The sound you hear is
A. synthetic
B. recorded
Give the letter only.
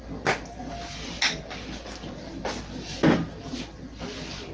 B